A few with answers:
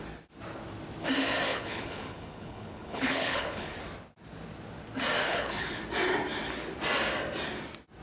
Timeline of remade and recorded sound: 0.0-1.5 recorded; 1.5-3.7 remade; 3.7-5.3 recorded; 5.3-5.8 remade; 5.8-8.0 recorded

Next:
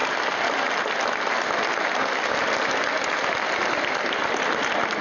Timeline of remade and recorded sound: 0.0-5.0 recorded

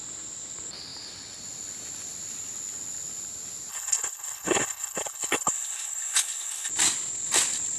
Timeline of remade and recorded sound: 0.0-3.7 recorded; 3.7-6.7 remade; 6.7-7.8 recorded

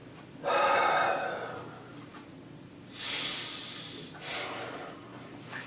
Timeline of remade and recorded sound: 0.0-5.7 recorded

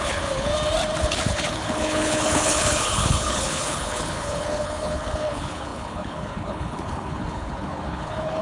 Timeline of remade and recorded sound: 0.0-0.5 remade; 0.5-1.0 recorded; 1.0-8.4 remade